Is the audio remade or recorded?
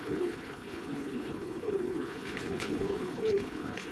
remade